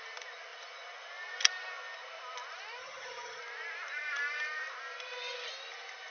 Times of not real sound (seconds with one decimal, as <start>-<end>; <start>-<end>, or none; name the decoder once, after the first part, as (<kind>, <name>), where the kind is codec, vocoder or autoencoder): 2.8-3.4 (vocoder, HiFi-GAN)